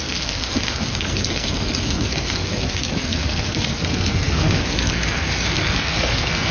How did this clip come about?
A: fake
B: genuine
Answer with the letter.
A